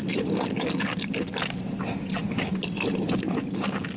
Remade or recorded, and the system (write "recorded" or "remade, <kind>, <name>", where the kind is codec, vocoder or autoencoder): recorded